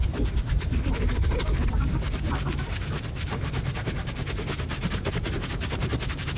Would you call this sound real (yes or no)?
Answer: no